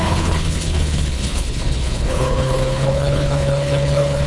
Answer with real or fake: fake